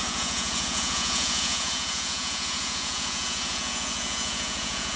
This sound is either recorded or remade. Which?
remade